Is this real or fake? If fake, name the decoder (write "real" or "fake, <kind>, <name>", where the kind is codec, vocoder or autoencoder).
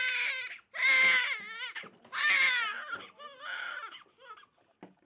real